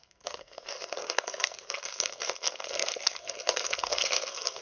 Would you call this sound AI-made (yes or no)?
yes